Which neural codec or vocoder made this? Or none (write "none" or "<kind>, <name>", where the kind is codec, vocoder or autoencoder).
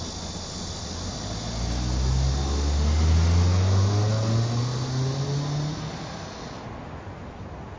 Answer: none